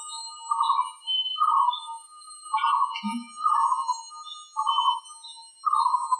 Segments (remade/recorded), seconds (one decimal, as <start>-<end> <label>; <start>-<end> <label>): 0.0-6.2 recorded